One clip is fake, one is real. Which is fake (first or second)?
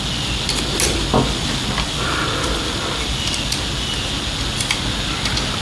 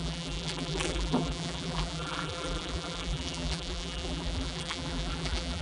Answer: second